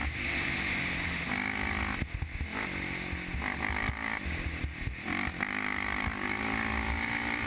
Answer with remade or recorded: recorded